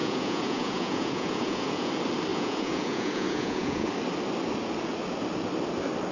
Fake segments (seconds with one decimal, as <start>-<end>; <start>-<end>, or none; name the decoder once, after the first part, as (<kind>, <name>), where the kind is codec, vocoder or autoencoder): 0.0-1.9 (vocoder, Vocos); 2.3-3.9